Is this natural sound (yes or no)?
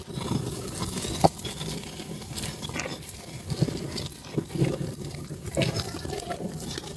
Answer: yes